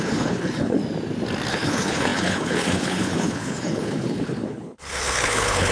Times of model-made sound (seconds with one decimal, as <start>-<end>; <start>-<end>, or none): 0.0-0.8; 1.5-5.7